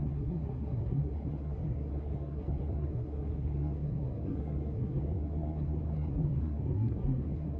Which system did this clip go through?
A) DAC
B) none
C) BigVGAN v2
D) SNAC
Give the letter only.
D